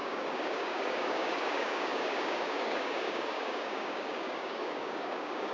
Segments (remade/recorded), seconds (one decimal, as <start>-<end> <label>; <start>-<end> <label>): 0.0-5.5 remade